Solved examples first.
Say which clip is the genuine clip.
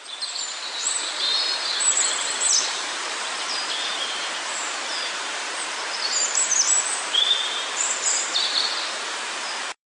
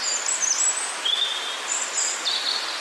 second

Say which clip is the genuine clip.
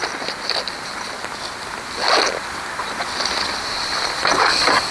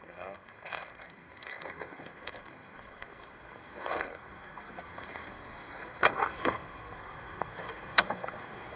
first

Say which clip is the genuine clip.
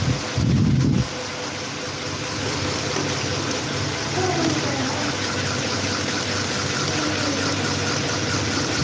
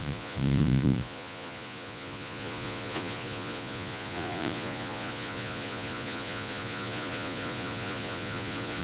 first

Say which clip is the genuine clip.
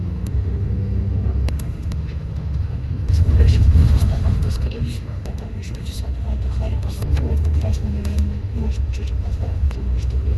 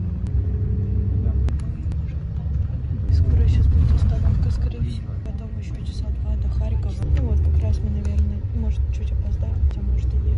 second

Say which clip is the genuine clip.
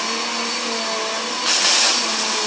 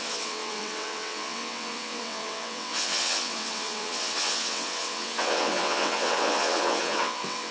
first